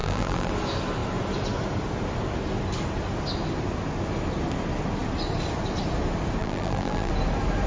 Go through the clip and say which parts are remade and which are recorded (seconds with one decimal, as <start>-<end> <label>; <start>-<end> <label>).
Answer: 0.0-0.5 remade; 0.5-6.4 recorded; 6.4-7.1 remade; 7.1-7.7 recorded